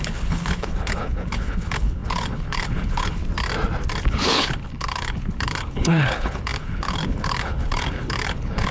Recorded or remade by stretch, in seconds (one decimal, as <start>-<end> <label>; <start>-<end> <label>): 0.0-3.2 remade; 3.2-4.1 recorded; 4.1-8.7 remade